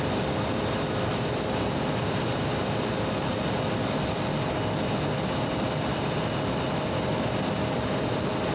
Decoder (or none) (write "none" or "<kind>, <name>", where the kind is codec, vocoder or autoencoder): none